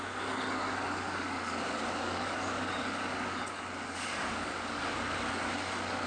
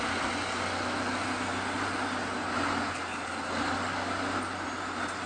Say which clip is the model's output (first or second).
first